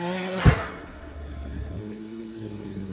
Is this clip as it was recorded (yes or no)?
no